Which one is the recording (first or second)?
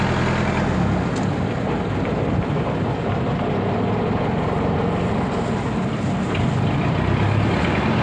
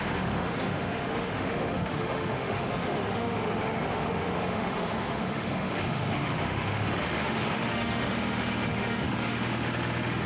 first